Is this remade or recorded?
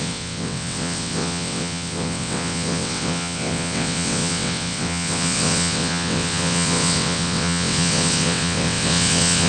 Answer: remade